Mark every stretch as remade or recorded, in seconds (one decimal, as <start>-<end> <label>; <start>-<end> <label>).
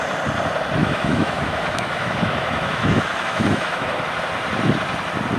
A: 0.0-0.8 recorded; 0.8-4.0 remade; 4.0-5.4 recorded